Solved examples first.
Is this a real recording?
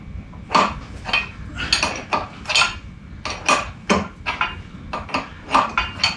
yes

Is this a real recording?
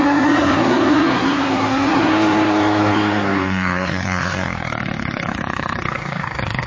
no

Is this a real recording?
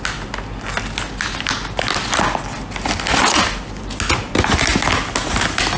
yes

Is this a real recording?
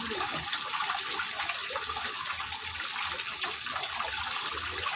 yes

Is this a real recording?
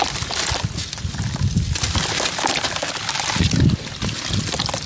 yes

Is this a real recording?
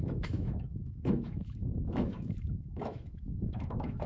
no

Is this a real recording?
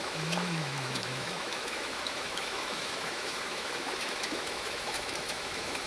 no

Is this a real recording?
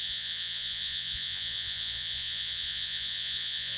no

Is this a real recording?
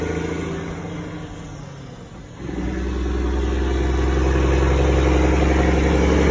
yes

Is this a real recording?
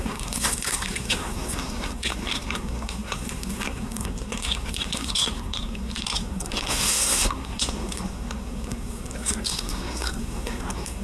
no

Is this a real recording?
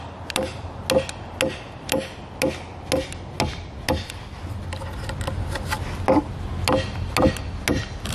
yes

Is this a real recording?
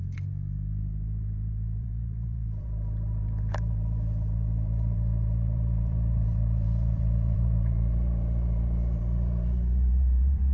no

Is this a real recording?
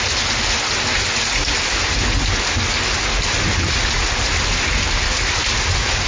yes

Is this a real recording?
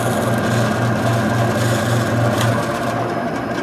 yes